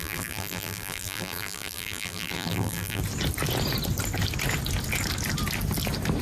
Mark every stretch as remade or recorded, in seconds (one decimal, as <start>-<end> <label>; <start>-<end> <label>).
0.0-3.0 remade; 3.0-6.2 recorded